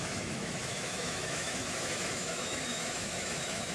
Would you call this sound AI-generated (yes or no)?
yes